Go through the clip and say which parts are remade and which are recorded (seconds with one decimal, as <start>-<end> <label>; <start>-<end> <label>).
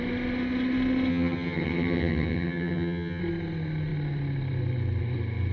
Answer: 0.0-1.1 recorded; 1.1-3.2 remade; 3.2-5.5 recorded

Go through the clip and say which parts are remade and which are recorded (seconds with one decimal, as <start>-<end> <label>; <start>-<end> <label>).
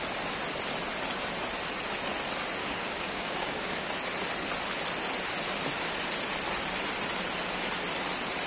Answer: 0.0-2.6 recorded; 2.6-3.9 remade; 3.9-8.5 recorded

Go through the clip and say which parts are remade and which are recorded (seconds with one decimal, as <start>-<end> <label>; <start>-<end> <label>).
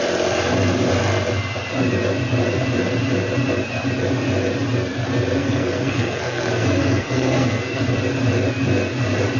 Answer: 0.0-5.4 recorded; 5.4-7.8 remade; 7.8-9.4 recorded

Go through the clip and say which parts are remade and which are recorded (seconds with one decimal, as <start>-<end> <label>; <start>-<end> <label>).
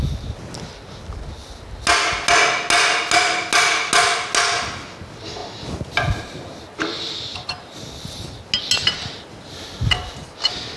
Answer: 0.0-7.3 recorded; 7.3-8.2 remade; 8.2-10.8 recorded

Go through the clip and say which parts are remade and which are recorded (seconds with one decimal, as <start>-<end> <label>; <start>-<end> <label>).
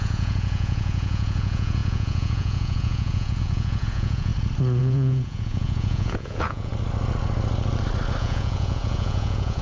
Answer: 0.0-4.3 remade; 4.3-4.8 recorded; 4.8-6.7 remade; 6.7-8.2 recorded; 8.2-9.6 remade